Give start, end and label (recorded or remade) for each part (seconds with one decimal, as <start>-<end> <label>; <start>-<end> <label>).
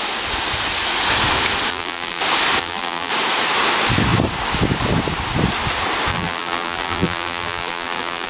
0.0-1.7 recorded; 1.7-2.2 remade; 2.2-2.6 recorded; 2.6-3.1 remade; 3.1-6.1 recorded; 6.1-8.3 remade